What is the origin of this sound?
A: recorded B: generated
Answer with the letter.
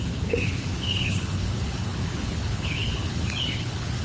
B